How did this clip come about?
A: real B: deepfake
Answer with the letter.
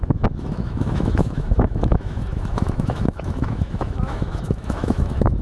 B